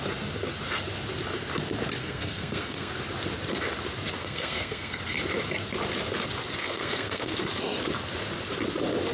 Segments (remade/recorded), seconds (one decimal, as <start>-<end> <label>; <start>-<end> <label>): 0.0-2.0 recorded; 2.0-2.9 remade; 2.9-4.2 recorded; 4.2-5.0 remade; 5.0-6.6 recorded; 6.6-7.4 remade; 7.4-9.1 recorded